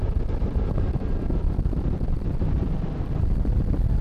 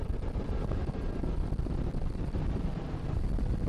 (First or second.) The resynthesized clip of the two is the first